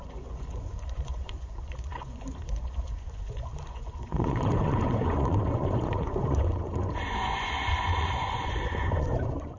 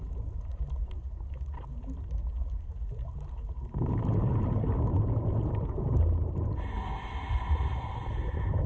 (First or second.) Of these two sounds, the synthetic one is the first